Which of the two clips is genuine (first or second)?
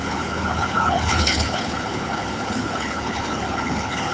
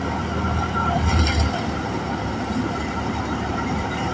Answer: second